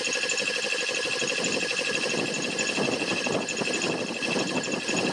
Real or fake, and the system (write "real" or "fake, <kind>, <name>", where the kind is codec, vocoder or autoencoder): real